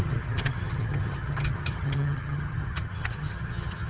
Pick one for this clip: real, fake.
fake